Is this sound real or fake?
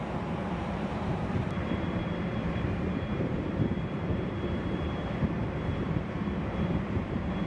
fake